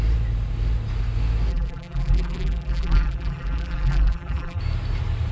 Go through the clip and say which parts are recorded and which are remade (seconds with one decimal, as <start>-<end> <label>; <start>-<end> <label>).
0.0-1.5 recorded; 1.5-4.6 remade; 4.6-5.3 recorded